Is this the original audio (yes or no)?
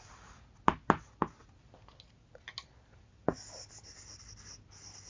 yes